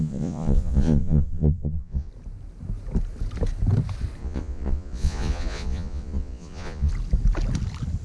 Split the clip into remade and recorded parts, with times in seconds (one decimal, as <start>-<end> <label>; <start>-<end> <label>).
0.0-2.1 remade; 2.1-4.2 recorded; 4.2-6.9 remade; 6.9-8.0 recorded